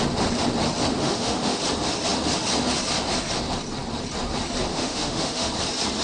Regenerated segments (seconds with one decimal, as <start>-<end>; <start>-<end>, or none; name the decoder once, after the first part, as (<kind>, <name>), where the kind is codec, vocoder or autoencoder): 1.0-1.6 (autoencoder, DAC-VAE); 4.7-5.5